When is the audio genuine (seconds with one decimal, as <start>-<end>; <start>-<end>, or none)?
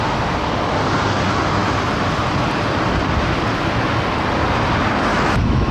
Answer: 0.0-5.1